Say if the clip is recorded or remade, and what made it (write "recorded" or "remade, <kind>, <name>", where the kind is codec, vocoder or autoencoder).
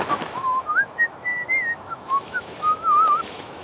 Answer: remade, autoencoder, DAC-VAE